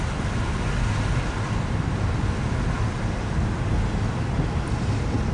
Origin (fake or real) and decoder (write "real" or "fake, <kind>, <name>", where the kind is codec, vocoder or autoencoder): real